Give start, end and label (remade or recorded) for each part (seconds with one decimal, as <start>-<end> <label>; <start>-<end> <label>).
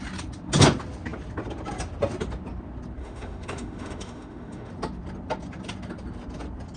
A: 0.0-3.0 recorded; 3.0-4.7 remade; 4.7-6.8 recorded